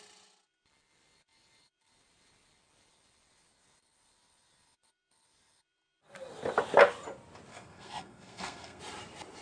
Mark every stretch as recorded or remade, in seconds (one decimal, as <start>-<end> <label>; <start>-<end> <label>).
0.0-7.5 recorded; 7.5-8.8 remade; 8.8-9.4 recorded